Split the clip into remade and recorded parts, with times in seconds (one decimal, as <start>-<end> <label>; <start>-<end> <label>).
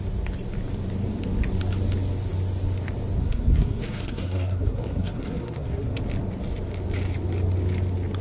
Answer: 0.0-3.2 recorded; 3.2-6.0 remade; 6.0-8.2 recorded